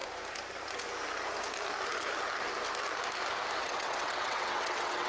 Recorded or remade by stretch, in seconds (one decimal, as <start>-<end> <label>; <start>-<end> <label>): 0.0-3.6 recorded; 3.6-5.1 remade